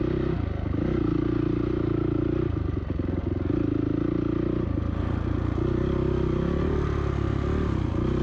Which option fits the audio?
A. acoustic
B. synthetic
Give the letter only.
A